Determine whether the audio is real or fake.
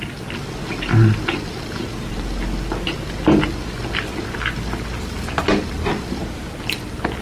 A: real